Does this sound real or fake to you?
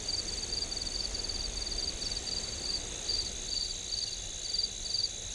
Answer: real